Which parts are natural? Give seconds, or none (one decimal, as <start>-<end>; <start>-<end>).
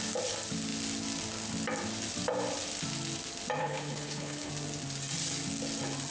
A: 0.0-3.6; 4.5-6.1